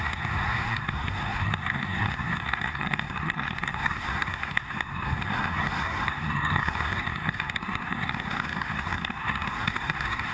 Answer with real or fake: fake